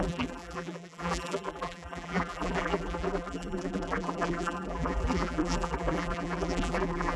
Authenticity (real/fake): fake